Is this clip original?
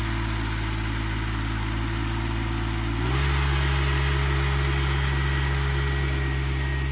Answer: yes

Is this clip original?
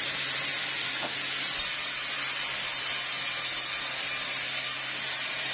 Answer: yes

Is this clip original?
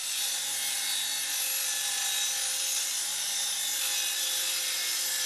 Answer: yes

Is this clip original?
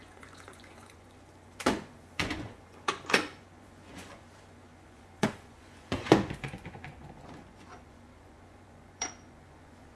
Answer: no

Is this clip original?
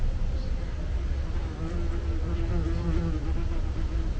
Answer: yes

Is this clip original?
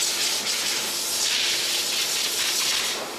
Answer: yes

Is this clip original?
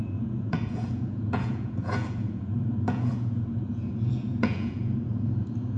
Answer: no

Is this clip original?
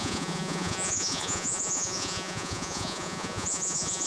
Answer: no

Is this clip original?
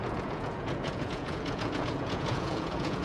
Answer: no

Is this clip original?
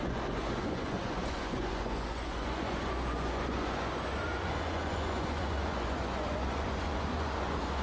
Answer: no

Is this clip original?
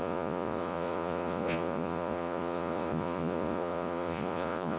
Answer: no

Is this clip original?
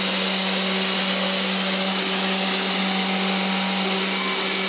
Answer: yes